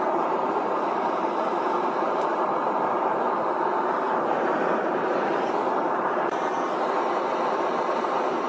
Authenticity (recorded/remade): remade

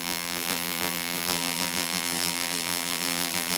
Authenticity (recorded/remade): remade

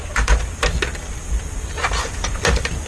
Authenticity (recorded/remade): remade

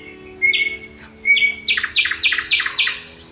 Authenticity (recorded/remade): recorded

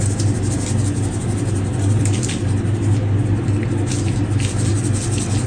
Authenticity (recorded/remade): recorded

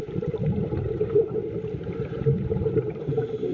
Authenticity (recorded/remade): remade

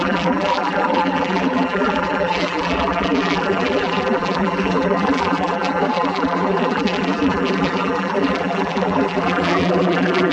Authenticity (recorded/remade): remade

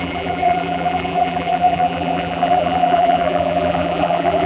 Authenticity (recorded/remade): remade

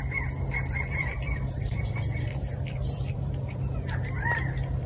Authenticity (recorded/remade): remade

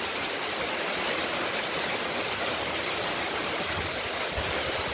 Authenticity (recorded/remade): recorded